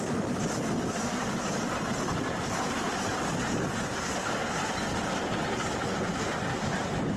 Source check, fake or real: real